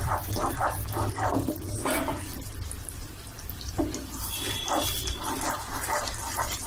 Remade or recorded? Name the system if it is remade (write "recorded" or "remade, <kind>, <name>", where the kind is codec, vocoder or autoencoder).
remade, vocoder, BigVGAN v2